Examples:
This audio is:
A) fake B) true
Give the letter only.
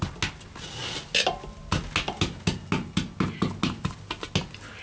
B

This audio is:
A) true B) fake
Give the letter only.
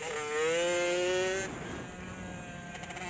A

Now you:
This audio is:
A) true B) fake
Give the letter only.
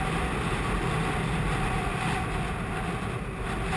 A